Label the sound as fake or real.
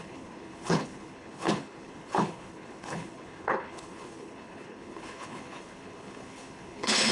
fake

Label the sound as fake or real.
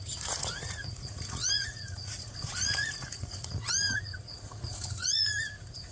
fake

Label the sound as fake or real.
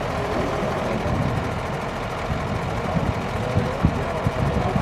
real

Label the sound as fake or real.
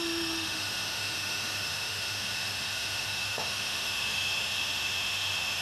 fake